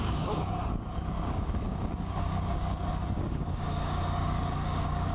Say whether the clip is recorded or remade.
remade